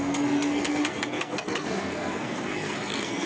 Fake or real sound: fake